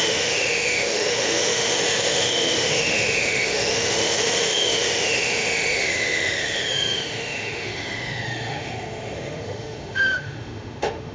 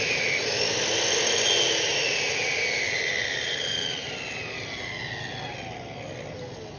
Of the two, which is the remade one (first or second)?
first